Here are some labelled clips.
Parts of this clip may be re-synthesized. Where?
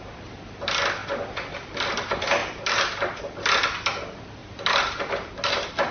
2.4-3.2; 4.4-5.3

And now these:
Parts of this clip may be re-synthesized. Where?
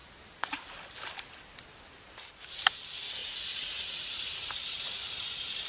3.2-4.4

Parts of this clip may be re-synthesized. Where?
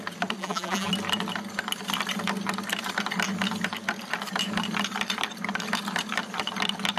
0.4-0.9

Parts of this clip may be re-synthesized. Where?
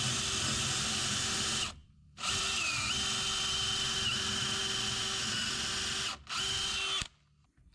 1.8-2.7